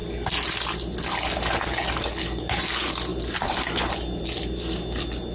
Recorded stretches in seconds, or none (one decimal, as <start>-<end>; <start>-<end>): 0.0-5.3